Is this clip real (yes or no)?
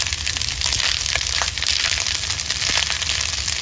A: yes